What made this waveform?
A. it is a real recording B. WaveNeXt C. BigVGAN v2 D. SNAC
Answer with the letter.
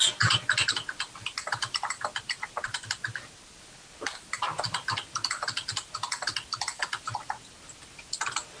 A